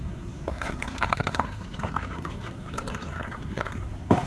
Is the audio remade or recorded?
remade